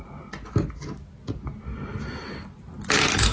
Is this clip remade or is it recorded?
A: recorded